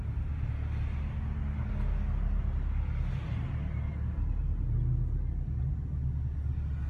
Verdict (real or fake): real